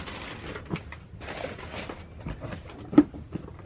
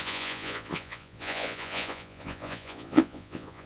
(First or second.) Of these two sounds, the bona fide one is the first